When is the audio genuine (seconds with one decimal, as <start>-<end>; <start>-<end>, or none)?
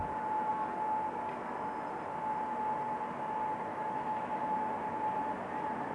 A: 0.0-3.7; 4.7-5.9